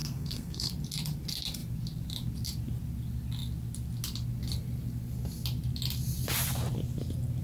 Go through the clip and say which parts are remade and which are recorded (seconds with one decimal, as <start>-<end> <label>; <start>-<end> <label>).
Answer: 0.0-0.7 remade; 0.7-7.4 recorded